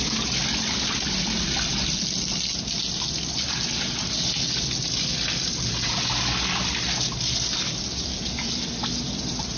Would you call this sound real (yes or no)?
yes